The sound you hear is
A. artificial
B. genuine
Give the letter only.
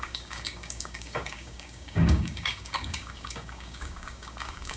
A